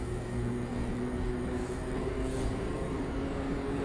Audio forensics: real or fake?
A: fake